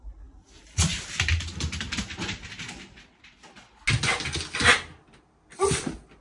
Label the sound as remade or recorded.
recorded